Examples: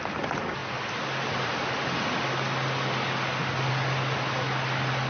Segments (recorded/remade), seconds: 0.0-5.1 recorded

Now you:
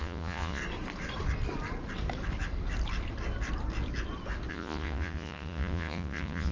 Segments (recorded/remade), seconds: 0.0-0.6 remade; 0.6-4.5 recorded; 4.5-6.5 remade

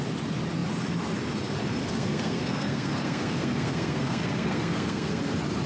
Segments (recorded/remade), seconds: 0.0-1.8 recorded; 1.8-5.2 remade; 5.2-5.7 recorded

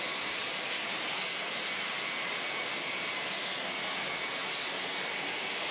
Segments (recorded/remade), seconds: 0.0-5.7 recorded